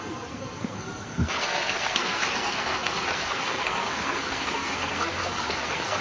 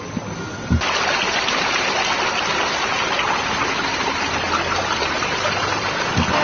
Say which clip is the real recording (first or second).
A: second